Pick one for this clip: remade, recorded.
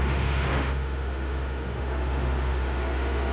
remade